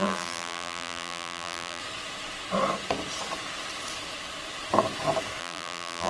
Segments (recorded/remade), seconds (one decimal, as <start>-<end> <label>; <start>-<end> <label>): 0.0-1.8 remade; 1.8-5.4 recorded; 5.4-6.1 remade